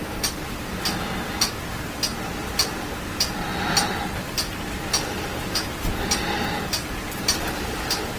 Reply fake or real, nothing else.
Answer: real